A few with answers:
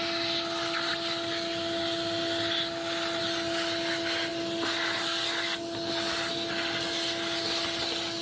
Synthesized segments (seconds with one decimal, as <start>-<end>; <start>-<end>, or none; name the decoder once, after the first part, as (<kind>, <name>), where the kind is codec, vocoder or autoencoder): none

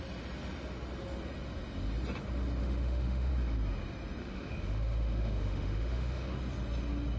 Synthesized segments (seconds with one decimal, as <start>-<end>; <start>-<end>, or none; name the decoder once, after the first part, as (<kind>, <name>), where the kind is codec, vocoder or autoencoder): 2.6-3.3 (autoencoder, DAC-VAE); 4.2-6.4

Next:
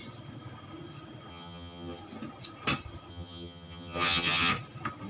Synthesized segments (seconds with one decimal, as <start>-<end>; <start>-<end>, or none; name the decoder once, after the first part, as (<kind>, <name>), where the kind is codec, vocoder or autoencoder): 1.3-2.0 (vocoder, HiFi-GAN); 3.1-4.5